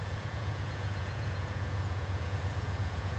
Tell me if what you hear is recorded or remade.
remade